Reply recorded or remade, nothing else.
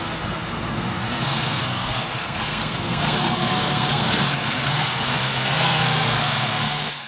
remade